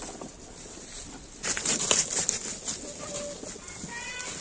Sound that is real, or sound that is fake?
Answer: real